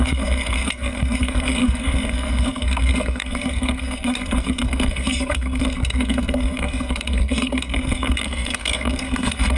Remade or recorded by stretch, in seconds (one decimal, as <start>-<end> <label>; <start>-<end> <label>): 0.0-9.6 remade